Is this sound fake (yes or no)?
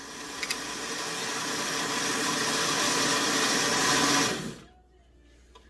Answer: no